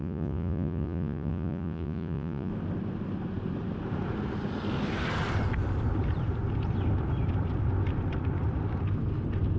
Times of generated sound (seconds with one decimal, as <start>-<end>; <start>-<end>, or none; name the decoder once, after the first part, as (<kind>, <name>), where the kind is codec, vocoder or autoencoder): 0.0-2.5 (vocoder, Vocos)